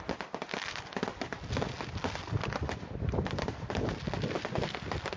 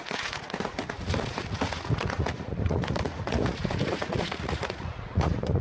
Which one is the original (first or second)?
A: first